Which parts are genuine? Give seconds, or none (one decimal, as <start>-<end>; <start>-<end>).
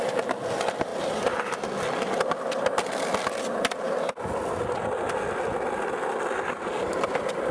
0.0-7.5